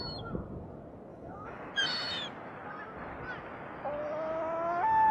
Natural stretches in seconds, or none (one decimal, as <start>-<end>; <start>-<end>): 0.0-1.1; 1.7-5.1

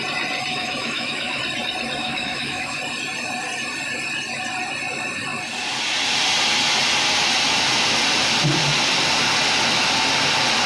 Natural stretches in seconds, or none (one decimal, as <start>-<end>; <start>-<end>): 0.0-0.5; 1.4-2.0; 2.8-10.7

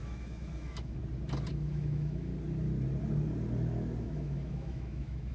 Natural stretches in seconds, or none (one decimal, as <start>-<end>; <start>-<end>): 1.0-1.5; 2.3-4.0